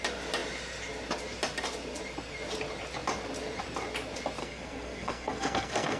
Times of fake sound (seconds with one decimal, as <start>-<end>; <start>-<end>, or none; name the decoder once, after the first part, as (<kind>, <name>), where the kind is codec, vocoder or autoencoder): 4.4-6.0 (codec, SNAC)

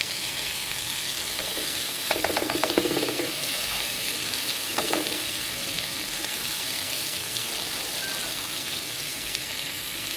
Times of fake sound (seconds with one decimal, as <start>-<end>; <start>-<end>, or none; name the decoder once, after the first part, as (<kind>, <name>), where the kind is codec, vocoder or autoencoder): 0.0-7.5 (codec, SNAC); 8.3-10.2

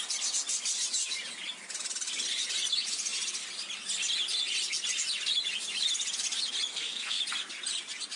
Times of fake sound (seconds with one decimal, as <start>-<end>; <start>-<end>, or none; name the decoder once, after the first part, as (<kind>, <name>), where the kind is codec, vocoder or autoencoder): 6.7-7.2 (codec, SNAC)

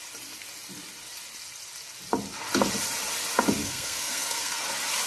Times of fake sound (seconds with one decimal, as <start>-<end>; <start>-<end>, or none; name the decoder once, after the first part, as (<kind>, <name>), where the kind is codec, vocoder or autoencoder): 3.6-4.6 (codec, SNAC)

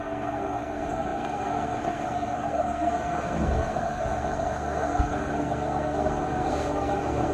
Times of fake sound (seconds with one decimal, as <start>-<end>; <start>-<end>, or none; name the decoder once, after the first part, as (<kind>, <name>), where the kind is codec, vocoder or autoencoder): 0.0-7.3 (codec, SNAC)